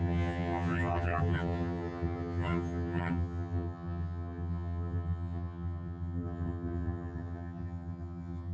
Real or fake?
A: fake